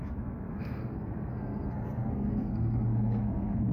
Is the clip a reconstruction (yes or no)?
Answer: yes